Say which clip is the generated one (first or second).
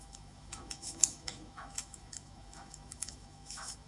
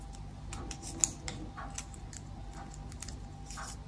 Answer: first